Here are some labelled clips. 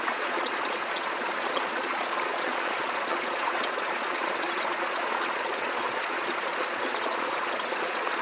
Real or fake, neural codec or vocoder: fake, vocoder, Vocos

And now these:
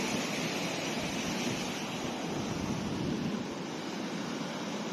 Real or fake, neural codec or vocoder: real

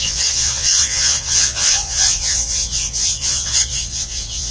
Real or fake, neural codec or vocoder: fake, vocoder, Vocos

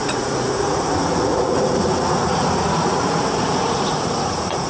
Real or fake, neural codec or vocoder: fake, vocoder, Vocos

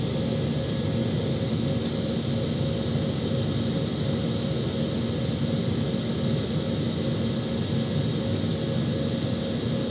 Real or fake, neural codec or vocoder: real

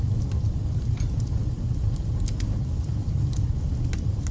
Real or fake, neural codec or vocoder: real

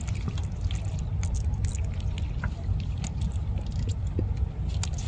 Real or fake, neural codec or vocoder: real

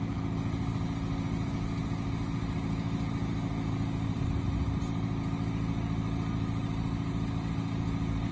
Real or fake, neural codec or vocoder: real